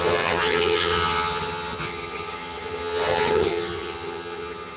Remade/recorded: remade